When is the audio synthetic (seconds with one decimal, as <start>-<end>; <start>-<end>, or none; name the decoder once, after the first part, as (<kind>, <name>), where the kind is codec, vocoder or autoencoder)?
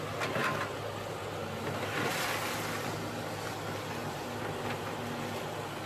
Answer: none